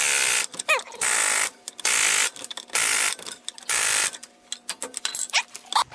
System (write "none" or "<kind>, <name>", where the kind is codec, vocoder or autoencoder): none